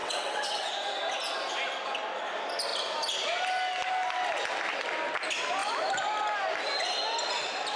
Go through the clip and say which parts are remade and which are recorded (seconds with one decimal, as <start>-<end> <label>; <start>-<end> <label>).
0.0-0.7 remade; 0.7-7.8 recorded